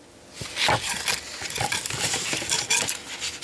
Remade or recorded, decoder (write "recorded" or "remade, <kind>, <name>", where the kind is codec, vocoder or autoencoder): recorded